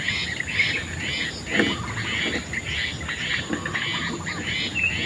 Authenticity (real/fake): real